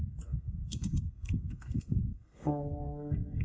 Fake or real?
fake